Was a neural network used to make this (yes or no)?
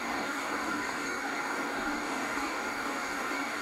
yes